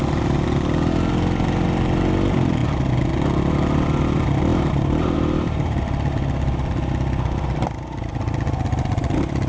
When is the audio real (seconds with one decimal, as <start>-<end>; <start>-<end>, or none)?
0.0-4.5; 5.8-9.5